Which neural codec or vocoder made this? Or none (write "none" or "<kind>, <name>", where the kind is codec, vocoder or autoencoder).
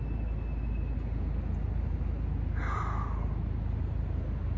none